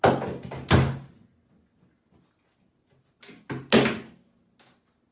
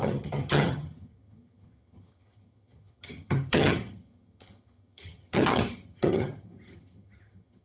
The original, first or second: first